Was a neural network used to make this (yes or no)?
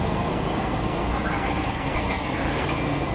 yes